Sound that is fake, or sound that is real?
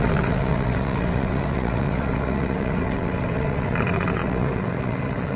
fake